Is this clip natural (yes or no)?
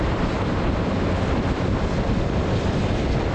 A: no